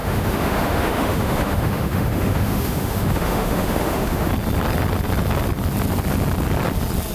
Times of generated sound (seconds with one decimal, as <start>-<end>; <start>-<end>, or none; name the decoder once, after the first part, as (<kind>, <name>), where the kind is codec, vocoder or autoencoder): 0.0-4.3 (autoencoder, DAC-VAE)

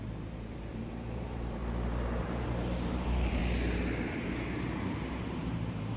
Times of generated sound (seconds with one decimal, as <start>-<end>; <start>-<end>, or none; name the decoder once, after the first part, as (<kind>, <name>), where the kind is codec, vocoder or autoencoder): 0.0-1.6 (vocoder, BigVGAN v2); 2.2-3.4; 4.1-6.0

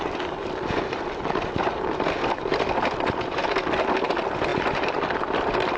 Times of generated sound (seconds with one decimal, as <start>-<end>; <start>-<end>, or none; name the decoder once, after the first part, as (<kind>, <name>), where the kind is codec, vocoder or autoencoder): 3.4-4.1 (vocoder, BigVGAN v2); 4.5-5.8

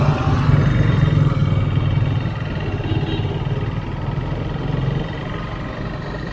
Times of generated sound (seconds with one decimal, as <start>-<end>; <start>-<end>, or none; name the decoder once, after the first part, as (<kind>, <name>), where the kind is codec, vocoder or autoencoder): none